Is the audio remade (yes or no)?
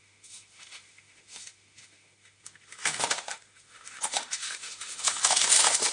yes